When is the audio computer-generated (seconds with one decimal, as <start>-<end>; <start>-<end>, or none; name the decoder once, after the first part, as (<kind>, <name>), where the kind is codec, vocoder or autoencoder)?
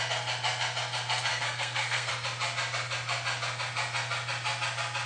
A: 1.3-2.1 (codec, SNAC)